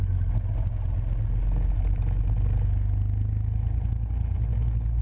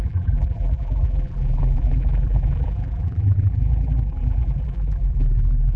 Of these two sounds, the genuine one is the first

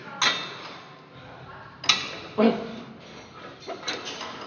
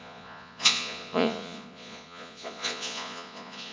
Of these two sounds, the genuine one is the first